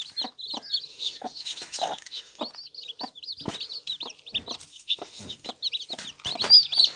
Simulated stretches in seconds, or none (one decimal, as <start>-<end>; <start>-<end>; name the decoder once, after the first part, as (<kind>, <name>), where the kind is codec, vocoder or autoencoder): 0.9-2.4 (autoencoder, DAC-VAE); 4.7-5.5